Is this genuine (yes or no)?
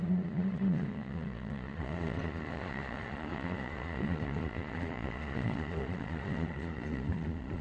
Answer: no